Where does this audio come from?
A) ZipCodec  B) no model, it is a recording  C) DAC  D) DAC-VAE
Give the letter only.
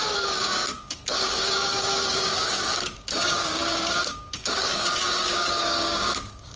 C